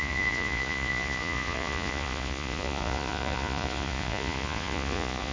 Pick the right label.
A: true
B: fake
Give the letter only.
B